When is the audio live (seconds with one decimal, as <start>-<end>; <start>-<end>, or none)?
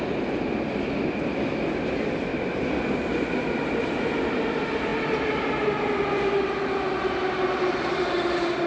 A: 0.0-8.7